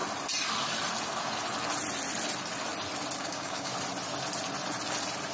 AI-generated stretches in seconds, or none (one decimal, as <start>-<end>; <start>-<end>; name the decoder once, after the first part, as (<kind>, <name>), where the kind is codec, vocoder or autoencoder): 3.2-3.7 (codec, DAC)